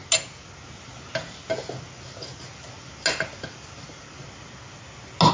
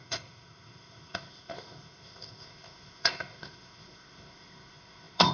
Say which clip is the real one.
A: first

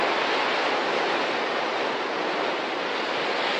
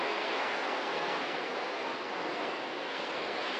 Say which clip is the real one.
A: first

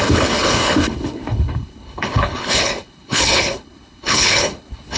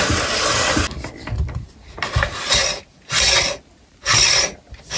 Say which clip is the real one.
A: second